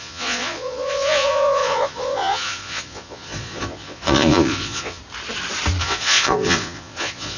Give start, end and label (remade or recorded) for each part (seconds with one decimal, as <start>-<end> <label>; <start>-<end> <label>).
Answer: 0.0-5.0 remade; 5.0-5.8 recorded; 5.8-7.4 remade